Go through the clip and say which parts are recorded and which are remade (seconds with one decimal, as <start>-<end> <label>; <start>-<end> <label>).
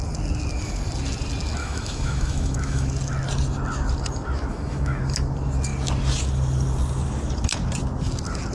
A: 0.0-1.6 recorded; 1.6-2.9 remade; 2.9-4.5 recorded; 4.5-5.0 remade; 5.0-8.5 recorded